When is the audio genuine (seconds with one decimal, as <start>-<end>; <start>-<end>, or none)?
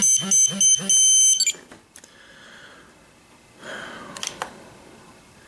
0.0-5.5